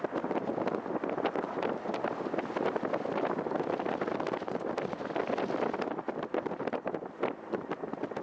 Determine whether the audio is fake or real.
real